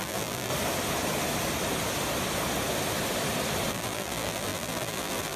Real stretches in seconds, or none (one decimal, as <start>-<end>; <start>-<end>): 0.5-3.7